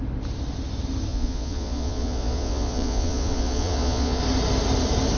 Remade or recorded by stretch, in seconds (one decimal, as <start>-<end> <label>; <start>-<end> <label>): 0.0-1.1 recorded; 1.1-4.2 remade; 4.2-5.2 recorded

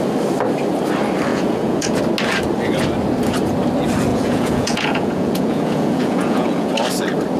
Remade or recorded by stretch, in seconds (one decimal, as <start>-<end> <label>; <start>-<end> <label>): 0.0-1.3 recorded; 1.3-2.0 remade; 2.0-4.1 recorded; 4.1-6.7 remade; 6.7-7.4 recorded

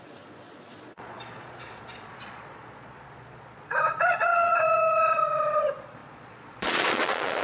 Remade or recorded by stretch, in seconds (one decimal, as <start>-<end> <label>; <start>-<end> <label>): 0.0-7.4 remade